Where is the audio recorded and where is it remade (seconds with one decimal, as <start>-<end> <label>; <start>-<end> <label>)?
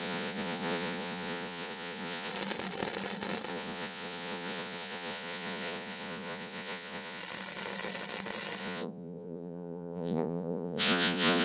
0.0-2.3 remade; 2.3-3.5 recorded; 3.5-7.2 remade; 7.2-8.6 recorded; 8.6-11.4 remade